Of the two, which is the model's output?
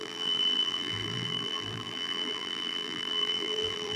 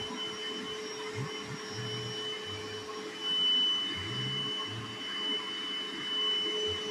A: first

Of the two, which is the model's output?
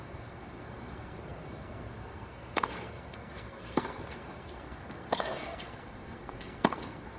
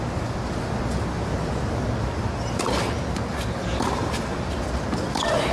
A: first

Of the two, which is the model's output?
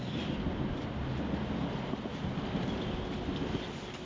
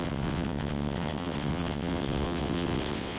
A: second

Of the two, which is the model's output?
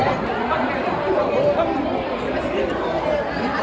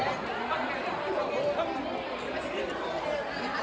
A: first